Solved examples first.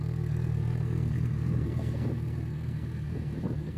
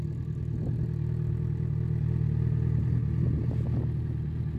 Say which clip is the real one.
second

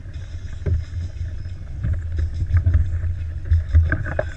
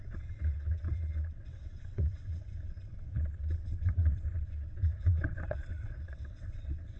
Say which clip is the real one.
first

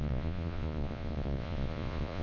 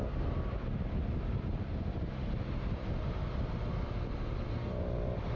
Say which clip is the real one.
second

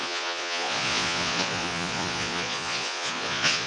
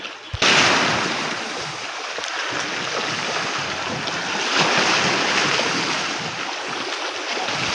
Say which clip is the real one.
second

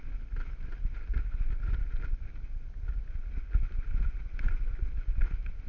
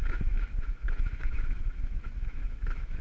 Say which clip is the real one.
first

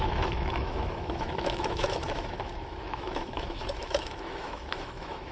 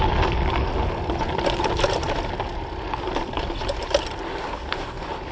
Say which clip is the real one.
second